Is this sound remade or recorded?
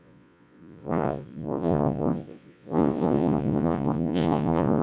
remade